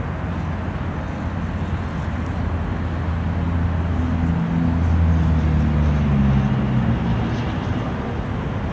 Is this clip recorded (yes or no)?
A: yes